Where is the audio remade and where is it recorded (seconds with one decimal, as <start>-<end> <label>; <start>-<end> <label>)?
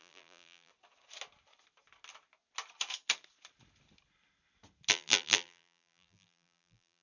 0.0-0.7 remade; 0.7-4.9 recorded; 4.9-7.0 remade